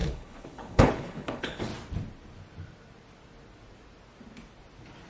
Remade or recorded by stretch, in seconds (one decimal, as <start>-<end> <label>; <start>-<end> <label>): 0.0-1.7 remade; 1.7-5.1 recorded